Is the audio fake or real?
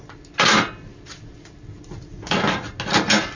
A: real